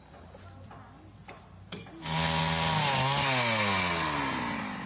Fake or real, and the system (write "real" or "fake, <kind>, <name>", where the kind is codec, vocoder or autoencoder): real